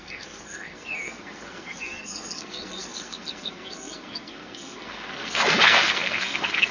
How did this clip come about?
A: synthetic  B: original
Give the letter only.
A